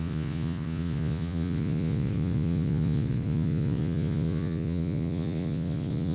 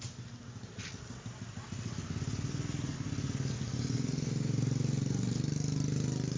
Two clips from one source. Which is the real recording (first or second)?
second